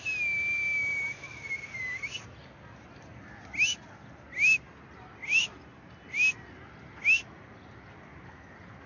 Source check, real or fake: real